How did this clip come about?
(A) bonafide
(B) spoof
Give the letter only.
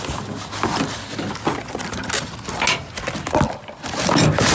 A